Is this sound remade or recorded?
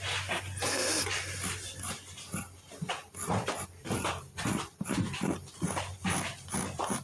recorded